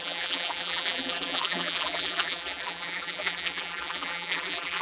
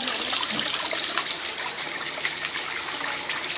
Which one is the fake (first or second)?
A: first